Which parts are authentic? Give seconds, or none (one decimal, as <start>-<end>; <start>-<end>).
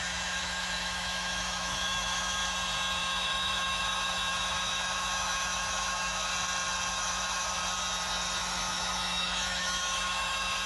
2.4-3.0; 6.3-6.9; 7.6-8.4